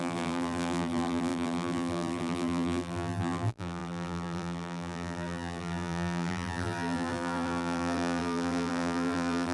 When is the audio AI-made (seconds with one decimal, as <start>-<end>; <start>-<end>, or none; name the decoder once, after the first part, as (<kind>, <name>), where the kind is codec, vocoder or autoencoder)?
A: 0.0-9.5 (vocoder, BigVGAN v2)